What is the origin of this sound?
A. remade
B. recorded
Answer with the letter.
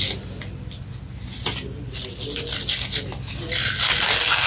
B